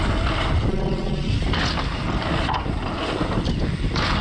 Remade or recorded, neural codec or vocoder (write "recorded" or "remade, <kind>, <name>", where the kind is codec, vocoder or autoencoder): recorded